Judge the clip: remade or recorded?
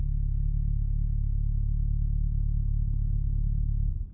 recorded